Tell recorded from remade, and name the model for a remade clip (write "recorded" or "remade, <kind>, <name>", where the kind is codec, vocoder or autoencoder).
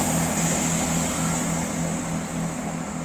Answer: recorded